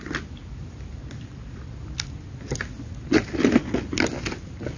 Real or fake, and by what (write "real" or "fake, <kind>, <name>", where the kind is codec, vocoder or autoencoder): real